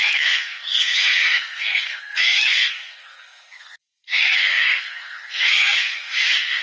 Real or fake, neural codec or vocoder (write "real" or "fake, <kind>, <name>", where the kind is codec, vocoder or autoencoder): fake, codec, SNAC